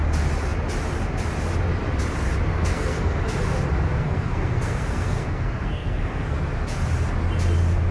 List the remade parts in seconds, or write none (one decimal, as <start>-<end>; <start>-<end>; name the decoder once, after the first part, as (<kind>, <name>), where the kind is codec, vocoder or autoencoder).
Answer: 2.5-3.2 (codec, SNAC); 3.9-6.4